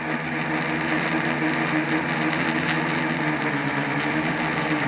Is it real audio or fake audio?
real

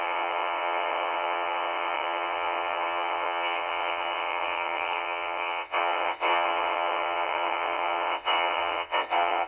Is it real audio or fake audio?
fake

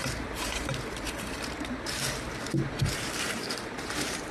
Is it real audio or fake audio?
fake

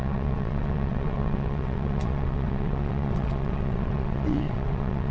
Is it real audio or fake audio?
fake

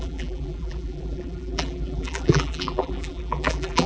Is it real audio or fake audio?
fake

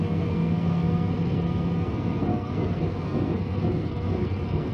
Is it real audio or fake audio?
fake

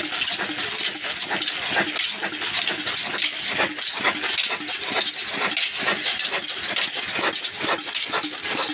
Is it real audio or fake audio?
real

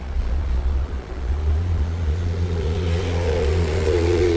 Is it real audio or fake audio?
fake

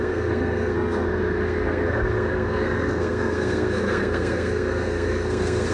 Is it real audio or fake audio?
fake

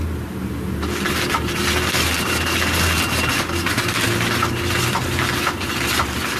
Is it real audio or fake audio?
real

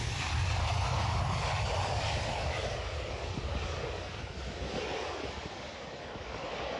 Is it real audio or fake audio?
fake